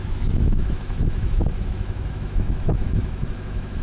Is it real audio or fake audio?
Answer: fake